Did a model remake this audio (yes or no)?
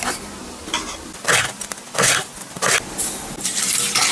no